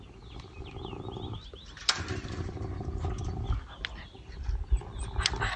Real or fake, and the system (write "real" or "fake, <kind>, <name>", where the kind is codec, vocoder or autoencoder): real